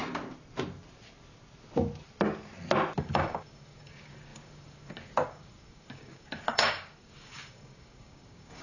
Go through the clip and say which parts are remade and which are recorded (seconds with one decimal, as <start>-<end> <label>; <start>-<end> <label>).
0.0-3.0 recorded; 3.0-8.6 remade